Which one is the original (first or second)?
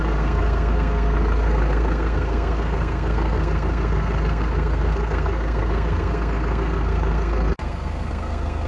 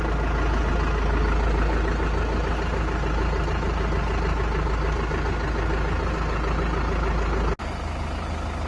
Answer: second